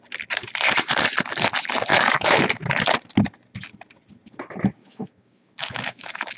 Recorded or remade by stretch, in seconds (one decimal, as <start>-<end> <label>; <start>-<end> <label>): 0.0-1.9 recorded; 1.9-2.5 remade; 2.5-4.8 recorded; 4.8-6.4 remade